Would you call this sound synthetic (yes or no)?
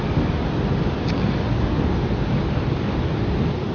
no